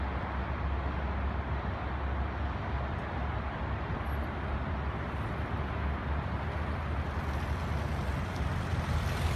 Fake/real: real